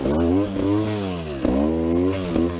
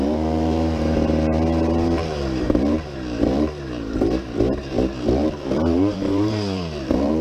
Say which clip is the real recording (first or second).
first